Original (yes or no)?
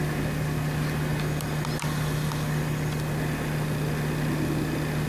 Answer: yes